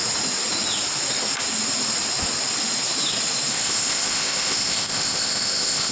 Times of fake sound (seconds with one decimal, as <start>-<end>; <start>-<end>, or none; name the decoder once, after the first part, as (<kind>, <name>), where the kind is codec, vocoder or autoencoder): 3.5-5.9 (codec, ZipCodec)